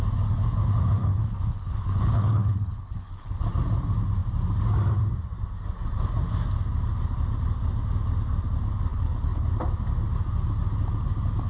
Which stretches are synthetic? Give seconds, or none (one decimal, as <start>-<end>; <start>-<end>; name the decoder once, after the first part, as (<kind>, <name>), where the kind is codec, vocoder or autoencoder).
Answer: 1.0-3.4 (codec, HILCodec); 8.9-9.5